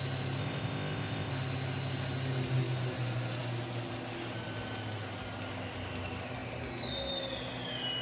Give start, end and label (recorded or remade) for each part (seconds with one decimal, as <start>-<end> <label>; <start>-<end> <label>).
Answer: 0.0-0.4 recorded; 0.4-1.3 remade; 1.3-8.0 recorded